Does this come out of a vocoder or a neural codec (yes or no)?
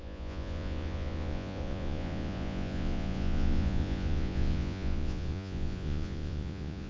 yes